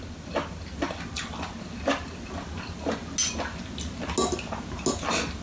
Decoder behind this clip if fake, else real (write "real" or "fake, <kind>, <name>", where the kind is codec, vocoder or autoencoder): real